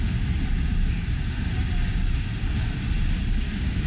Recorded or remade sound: recorded